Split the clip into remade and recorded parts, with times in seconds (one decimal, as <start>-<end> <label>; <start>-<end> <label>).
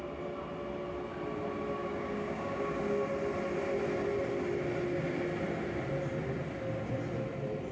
0.0-1.8 recorded; 1.8-2.8 remade; 2.8-7.7 recorded